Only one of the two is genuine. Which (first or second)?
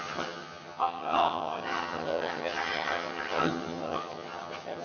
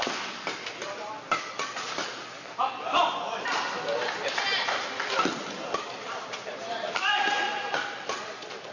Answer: second